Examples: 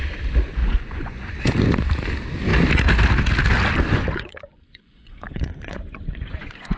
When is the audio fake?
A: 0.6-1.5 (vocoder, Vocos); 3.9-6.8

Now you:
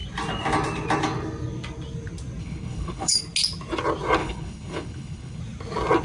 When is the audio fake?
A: 2.4-3.2 (codec, HILCodec); 4.2-5.4

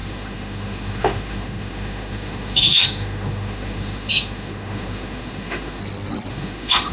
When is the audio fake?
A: 0.0-5.8 (autoencoder, DAC-VAE); 6.3-6.9

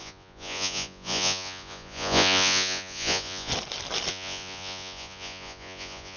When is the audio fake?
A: 0.0-3.5 (vocoder, Vocos); 4.1-6.2

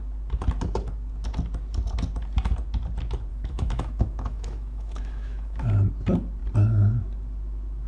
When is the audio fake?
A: 3.3-5.6 (autoencoder, DAC-VAE)

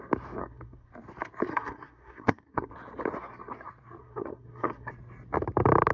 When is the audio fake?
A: 0.4-0.9 (codec, SNAC); 1.5-2.7; 4.0-4.9

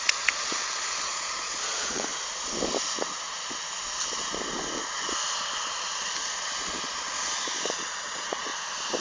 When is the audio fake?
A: 0.0-2.1 (vocoder, Vocos); 6.7-8.5

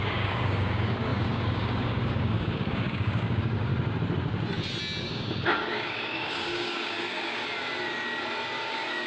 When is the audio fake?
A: 0.0-3.7 (codec, DAC); 5.0-7.4; 8.5-9.1